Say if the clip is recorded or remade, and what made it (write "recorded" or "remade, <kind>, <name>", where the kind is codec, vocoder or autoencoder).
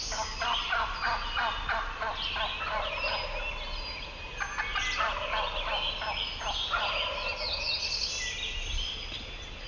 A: recorded